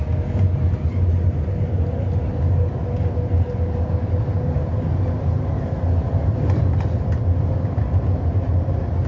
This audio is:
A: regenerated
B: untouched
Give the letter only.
B